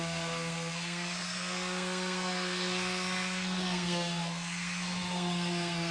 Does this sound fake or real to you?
fake